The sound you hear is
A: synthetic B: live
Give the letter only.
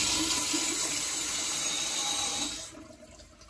B